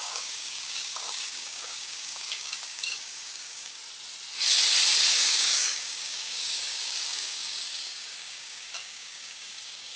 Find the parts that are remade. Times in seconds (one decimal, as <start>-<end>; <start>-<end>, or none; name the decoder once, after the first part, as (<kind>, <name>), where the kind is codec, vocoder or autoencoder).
0.0-3.8 (codec, DAC); 5.1-10.0

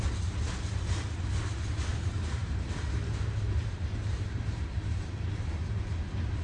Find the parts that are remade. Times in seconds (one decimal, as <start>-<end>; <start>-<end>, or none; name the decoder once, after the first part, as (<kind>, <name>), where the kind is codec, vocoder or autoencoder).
1.9-5.7 (vocoder, BigVGAN v2)

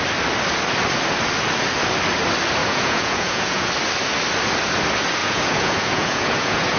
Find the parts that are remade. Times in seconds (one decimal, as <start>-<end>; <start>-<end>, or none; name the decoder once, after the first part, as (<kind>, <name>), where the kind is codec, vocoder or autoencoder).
2.6-3.7 (vocoder, Vocos); 5.2-6.8

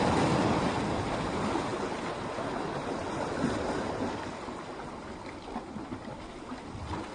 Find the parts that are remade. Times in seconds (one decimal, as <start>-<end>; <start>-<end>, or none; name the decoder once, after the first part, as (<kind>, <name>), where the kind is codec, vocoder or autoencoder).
none

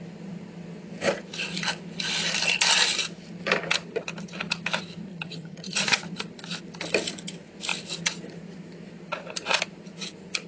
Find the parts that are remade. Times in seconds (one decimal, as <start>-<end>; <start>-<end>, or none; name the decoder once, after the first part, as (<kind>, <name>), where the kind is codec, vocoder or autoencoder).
5.1-6.0 (vocoder, HiFi-GAN)